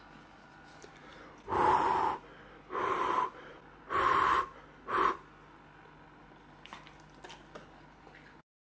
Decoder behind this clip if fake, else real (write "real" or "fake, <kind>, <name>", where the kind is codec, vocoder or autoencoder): real